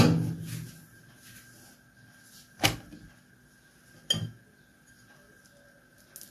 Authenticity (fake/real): real